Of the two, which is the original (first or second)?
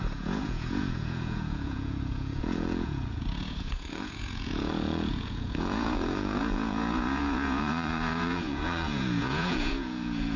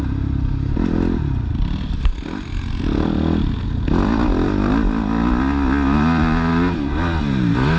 second